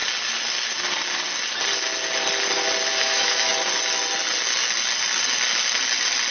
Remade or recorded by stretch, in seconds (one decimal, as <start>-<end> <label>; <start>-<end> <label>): 0.0-2.9 recorded; 2.9-3.5 remade; 3.5-6.3 recorded